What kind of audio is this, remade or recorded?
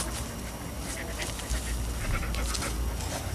recorded